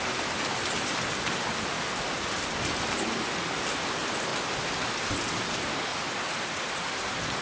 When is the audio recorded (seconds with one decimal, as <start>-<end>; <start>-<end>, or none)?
0.0-7.4